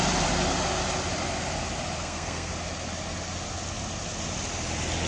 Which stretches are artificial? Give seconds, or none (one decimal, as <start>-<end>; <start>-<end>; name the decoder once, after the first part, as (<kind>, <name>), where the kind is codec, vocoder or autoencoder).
2.0-2.5 (codec, SNAC)